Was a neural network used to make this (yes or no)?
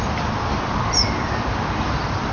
yes